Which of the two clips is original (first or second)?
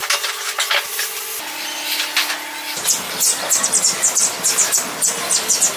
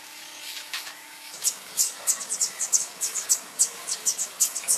first